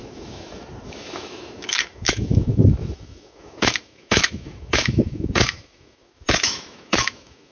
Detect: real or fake fake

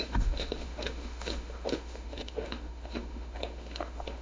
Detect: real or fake fake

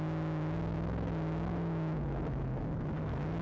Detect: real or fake fake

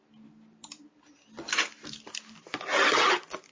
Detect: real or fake real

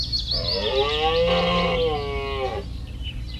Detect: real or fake real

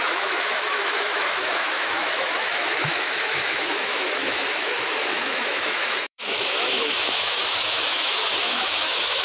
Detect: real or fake fake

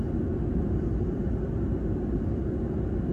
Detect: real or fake real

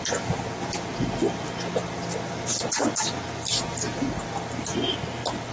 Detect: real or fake real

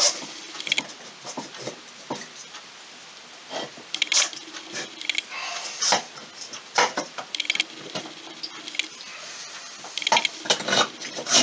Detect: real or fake real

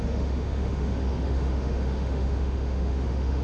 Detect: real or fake fake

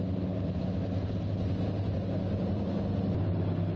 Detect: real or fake real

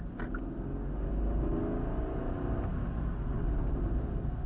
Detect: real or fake real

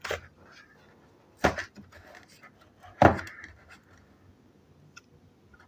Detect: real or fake real